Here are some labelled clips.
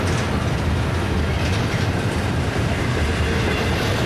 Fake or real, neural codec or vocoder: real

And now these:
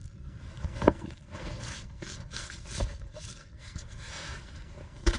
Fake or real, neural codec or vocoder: fake, codec, SNAC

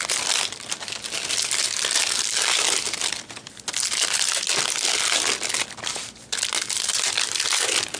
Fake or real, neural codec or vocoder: real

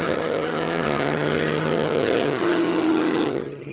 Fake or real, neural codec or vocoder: fake, vocoder, HiFi-GAN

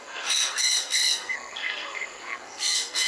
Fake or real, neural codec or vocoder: fake, codec, SNAC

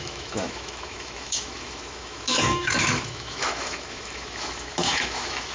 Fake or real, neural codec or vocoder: fake, autoencoder, DAC-VAE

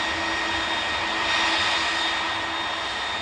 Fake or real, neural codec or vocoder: real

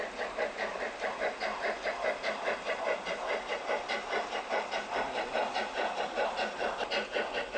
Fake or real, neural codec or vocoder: real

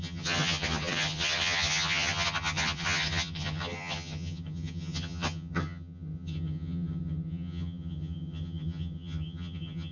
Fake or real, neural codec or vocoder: fake, vocoder, HiFi-GAN